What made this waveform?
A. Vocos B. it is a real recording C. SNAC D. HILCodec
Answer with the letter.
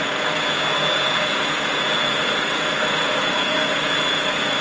A